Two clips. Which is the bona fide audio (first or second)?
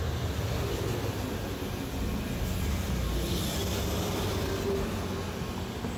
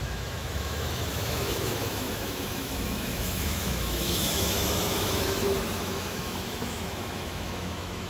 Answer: first